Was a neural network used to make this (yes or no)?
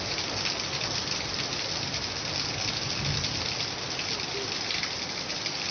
no